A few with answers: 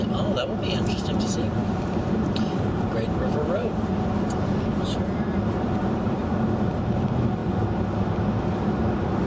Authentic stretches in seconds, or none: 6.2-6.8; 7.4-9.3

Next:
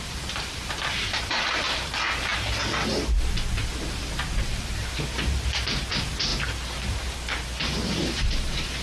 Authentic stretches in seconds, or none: 2.3-3.9; 6.3-7.7

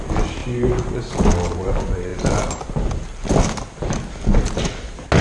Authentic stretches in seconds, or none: 0.0-5.2

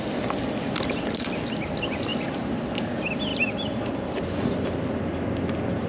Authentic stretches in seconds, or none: 0.0-2.1; 2.8-3.3; 4.2-5.9